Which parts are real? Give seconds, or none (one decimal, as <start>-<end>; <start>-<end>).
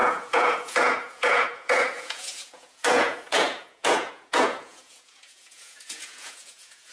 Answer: none